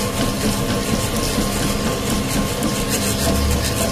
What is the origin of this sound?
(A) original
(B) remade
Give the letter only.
A